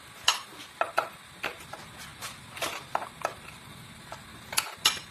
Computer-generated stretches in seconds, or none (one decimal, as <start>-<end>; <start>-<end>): none